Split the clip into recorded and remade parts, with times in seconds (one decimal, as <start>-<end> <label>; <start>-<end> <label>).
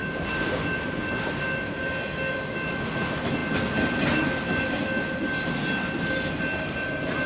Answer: 0.0-7.3 recorded